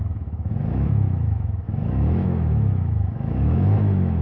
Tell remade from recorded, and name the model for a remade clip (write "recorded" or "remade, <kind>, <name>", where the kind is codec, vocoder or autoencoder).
remade, autoencoder, DAC-VAE